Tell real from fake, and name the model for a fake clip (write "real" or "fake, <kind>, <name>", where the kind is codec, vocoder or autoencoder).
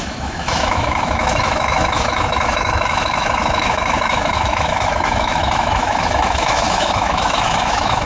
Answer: fake, autoencoder, DAC-VAE